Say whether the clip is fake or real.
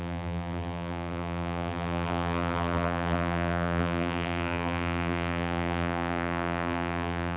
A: fake